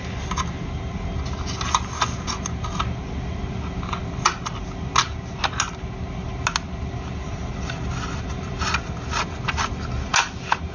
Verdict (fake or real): real